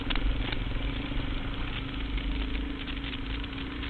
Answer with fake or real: real